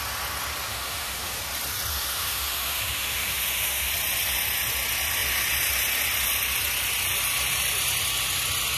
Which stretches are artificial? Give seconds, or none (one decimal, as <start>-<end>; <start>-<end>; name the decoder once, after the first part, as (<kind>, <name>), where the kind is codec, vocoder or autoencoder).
0.7-1.4 (autoencoder, DAC-VAE); 1.9-3.9